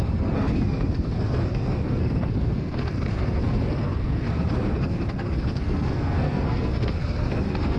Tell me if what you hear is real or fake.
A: fake